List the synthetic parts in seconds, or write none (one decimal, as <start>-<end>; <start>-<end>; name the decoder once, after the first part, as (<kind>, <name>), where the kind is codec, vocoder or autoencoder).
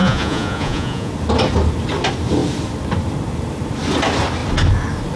0.0-1.1 (vocoder, Vocos)